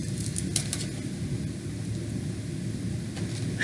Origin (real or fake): real